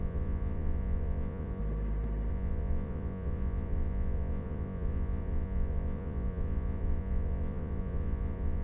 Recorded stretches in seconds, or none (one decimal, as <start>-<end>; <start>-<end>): 1.6-2.3